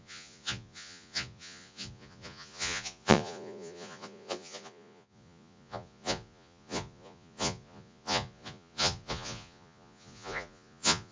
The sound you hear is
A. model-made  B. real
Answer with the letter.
A